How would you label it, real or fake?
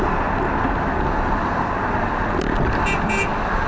real